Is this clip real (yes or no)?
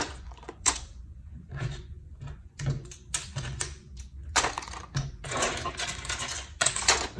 no